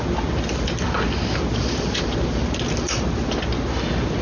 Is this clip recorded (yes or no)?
yes